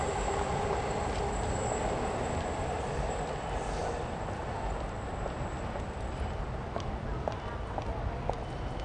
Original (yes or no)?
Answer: yes